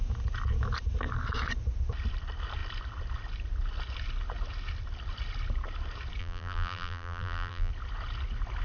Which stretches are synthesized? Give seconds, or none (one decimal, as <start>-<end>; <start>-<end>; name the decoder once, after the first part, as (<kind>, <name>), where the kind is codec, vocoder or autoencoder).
6.2-7.7 (vocoder, BigVGAN v2)